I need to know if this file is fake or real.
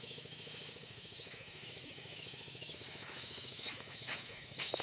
fake